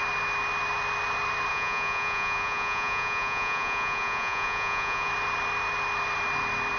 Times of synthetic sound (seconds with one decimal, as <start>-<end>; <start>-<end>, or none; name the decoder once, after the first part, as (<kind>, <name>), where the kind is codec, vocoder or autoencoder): 1.5-5.1 (vocoder, Vocos)